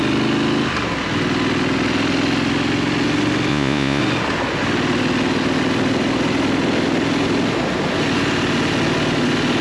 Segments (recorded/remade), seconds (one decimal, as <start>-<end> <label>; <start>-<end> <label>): 0.0-3.5 recorded; 3.5-4.0 remade; 4.0-9.6 recorded